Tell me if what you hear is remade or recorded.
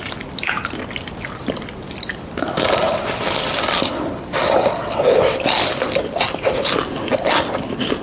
recorded